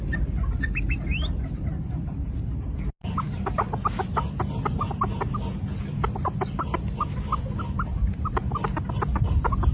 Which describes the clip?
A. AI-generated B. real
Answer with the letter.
B